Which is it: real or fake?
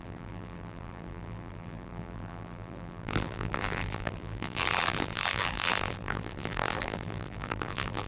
fake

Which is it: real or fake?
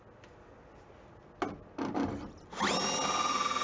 real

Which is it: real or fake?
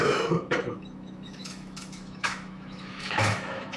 fake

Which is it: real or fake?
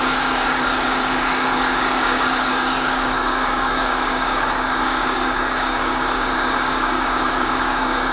fake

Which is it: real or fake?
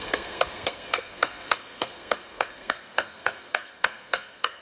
fake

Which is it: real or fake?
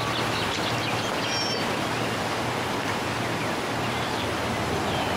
real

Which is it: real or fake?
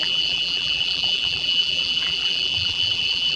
fake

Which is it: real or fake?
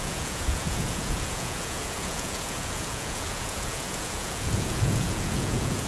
fake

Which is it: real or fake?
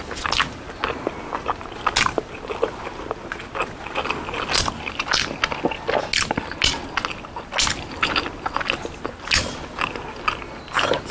real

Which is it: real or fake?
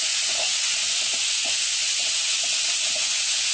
fake